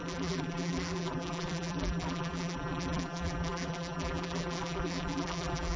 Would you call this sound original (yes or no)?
no